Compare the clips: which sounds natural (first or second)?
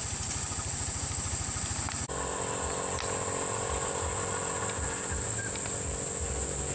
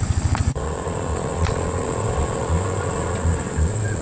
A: first